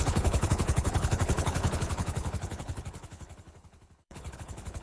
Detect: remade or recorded remade